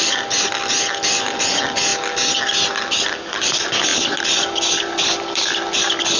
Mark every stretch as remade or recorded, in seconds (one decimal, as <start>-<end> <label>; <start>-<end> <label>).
0.0-6.2 recorded

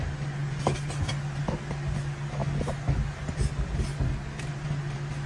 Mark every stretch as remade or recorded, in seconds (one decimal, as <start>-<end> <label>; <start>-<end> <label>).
0.0-5.3 recorded

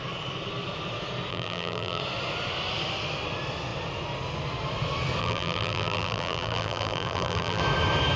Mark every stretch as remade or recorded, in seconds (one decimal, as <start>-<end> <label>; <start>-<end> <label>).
0.0-1.3 recorded; 1.3-2.0 remade; 2.0-5.2 recorded; 5.2-7.6 remade; 7.6-8.2 recorded

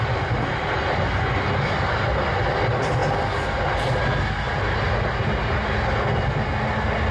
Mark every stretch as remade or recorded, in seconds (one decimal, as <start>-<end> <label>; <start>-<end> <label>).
0.0-7.1 recorded